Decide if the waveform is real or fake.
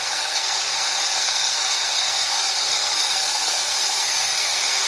fake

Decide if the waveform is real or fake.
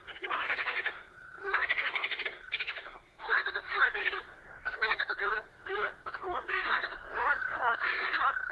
fake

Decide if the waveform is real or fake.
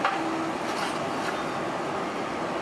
real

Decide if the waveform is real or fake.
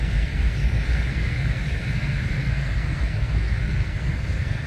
fake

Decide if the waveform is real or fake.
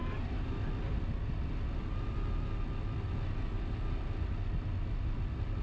real